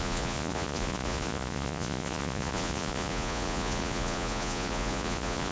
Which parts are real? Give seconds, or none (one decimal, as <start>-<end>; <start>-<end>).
none